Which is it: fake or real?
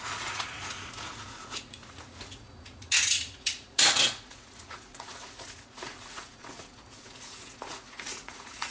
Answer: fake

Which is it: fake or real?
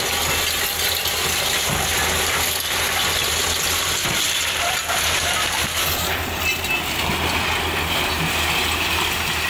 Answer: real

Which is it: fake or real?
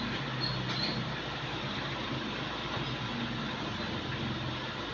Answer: real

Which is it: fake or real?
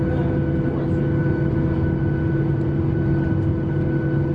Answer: real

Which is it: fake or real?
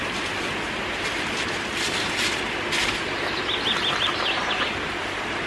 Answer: real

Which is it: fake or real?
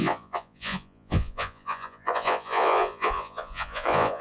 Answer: fake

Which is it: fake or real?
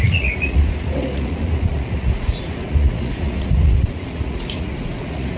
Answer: fake